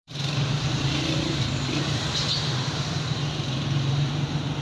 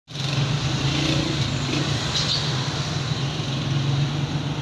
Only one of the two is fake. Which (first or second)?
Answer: first